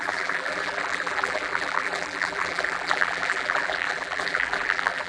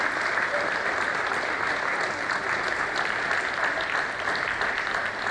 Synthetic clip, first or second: first